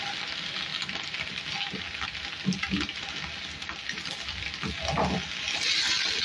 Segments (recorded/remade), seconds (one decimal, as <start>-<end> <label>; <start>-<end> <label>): 0.0-6.2 recorded